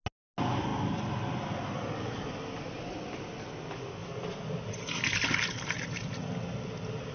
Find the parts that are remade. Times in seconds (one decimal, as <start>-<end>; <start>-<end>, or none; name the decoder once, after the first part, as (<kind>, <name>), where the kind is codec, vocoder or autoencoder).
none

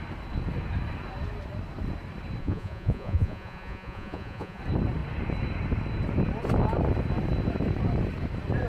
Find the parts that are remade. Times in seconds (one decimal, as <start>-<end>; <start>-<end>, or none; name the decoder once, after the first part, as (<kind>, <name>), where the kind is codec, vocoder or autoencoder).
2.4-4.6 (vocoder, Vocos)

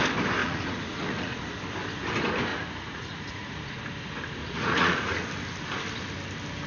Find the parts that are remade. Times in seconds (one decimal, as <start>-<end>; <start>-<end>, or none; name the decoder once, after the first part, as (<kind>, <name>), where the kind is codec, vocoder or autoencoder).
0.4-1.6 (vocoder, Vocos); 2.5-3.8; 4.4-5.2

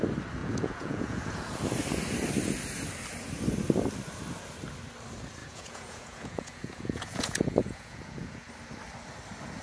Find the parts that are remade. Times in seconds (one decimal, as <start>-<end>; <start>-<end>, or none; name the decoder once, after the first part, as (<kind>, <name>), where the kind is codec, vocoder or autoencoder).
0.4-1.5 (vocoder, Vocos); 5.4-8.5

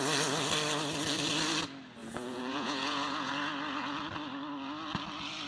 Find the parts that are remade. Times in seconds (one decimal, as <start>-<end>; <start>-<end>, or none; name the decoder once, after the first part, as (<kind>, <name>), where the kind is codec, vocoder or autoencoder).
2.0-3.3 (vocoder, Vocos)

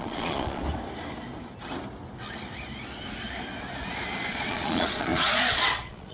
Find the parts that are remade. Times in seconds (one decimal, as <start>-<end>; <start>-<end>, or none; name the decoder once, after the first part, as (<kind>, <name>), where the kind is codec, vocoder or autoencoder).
0.0-0.6 (vocoder, Vocos); 4.3-6.1

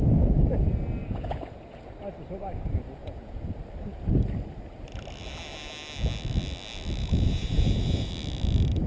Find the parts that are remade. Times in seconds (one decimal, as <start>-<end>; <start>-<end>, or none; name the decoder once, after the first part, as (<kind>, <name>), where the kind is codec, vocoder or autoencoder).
1.0-1.8 (vocoder, Vocos); 3.0-3.6; 7.0-8.1

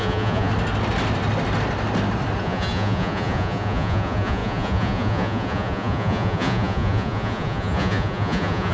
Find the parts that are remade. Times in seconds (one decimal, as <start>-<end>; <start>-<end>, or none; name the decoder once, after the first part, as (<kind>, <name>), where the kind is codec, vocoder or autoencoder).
0.0-0.5 (vocoder, Vocos); 2.4-8.7